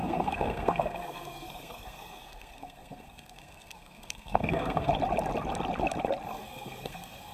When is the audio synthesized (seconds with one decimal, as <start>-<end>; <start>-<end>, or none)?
0.0-4.9; 6.4-7.3